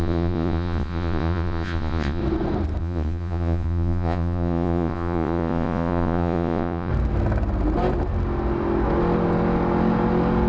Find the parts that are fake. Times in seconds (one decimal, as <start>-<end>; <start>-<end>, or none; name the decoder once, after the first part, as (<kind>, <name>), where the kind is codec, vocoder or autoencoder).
0.0-2.2 (vocoder, Vocos); 2.8-6.9